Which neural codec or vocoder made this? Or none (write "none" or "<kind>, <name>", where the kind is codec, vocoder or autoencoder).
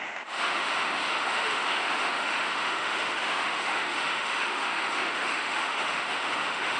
autoencoder, DAC-VAE